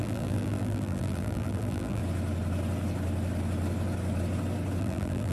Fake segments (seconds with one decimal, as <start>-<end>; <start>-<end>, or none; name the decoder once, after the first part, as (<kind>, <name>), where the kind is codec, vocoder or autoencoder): 0.0-2.0 (vocoder, BigVGAN v2); 4.8-5.3